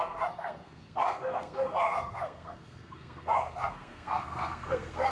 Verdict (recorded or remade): remade